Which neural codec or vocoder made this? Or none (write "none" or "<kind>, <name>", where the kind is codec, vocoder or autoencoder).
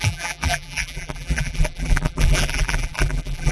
vocoder, BigVGAN v2